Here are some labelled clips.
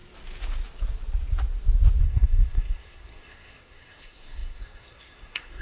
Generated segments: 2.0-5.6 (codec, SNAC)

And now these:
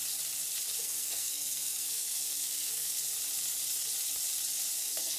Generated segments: 0.8-2.9 (codec, SNAC); 4.8-5.2

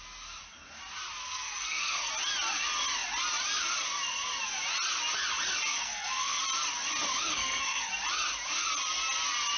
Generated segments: 1.2-2.1 (codec, SNAC); 5.7-6.4; 7.3-7.9

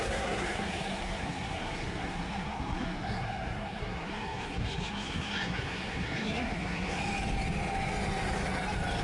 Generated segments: 0.0-7.0 (codec, SNAC)

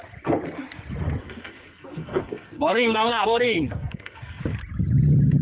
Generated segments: 1.2-4.4 (codec, SNAC)

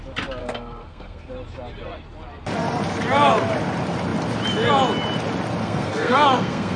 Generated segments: 0.4-1.3 (codec, SNAC); 5.6-6.8